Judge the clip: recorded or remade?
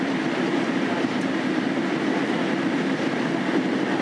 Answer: remade